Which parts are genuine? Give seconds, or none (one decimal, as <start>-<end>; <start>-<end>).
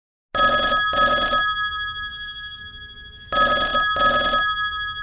0.0-2.1; 2.6-5.0